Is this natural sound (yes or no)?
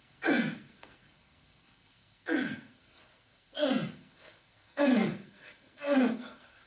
no